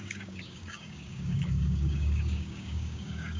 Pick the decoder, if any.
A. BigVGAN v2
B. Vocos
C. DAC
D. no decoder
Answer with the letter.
C